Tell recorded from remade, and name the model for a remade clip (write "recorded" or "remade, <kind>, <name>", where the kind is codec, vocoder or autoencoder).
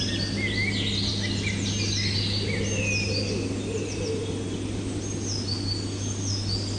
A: recorded